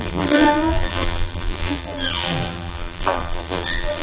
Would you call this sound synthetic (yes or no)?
yes